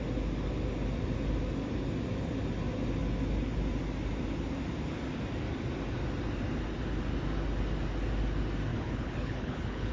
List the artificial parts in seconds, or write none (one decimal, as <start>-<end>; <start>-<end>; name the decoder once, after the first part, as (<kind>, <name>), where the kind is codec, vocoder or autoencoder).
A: 8.7-9.9 (codec, HILCodec)